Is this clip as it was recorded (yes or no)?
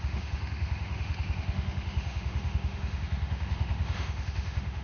no